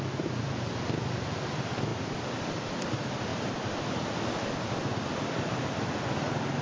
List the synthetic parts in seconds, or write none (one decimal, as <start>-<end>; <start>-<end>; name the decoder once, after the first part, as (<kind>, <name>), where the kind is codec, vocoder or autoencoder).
1.9-2.8 (vocoder, BigVGAN v2); 3.3-5.0